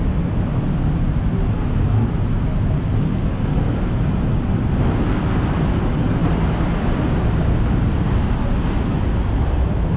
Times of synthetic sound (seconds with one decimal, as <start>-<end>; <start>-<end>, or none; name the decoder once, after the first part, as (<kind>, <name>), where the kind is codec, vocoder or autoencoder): 6.2-9.0 (vocoder, BigVGAN v2)